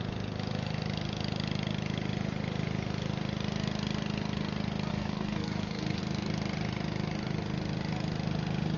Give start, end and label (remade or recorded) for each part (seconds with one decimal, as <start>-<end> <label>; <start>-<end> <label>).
0.0-4.9 recorded; 4.9-6.0 remade; 6.0-8.8 recorded